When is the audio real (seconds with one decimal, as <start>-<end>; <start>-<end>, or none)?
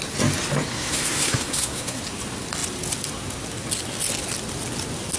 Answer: 0.0-0.7; 2.0-5.2